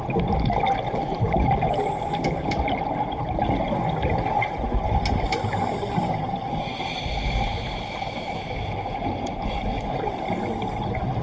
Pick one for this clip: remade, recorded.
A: recorded